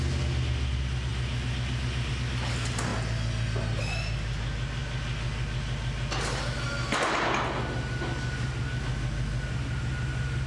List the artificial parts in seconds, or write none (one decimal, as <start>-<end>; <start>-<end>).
none